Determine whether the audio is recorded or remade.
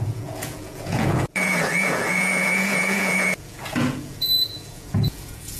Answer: remade